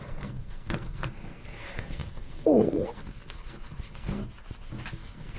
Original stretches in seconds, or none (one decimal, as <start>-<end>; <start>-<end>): 4.2-4.9